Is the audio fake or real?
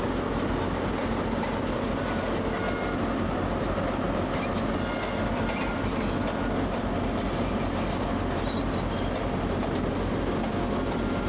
real